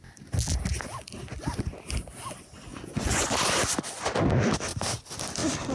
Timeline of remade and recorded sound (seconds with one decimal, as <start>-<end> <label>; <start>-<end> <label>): 0.0-2.7 recorded; 2.7-3.3 remade; 3.3-5.7 recorded